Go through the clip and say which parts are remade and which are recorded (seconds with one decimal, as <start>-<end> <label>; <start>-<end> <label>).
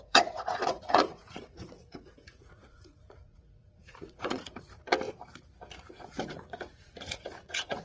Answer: 0.0-4.9 remade; 4.9-5.9 recorded; 5.9-7.8 remade